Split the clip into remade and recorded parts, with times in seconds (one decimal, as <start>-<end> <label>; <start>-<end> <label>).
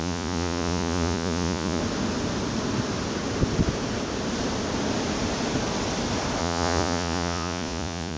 0.0-1.8 remade; 1.8-6.4 recorded; 6.4-8.2 remade